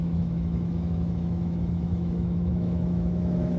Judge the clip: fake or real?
fake